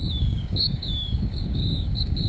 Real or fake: fake